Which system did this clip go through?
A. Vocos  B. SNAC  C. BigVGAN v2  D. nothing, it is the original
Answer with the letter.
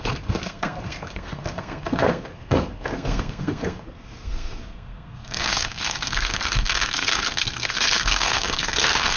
B